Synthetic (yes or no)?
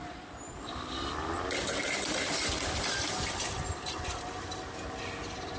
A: no